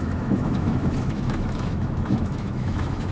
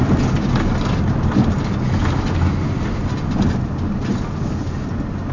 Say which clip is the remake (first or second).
first